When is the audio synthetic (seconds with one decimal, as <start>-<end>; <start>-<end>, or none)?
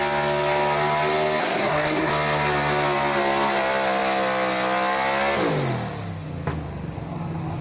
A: 1.4-2.1